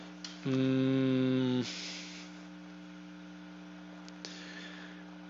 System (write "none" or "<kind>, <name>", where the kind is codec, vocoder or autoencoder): none